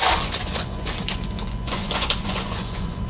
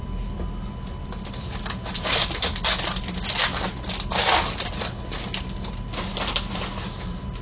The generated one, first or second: first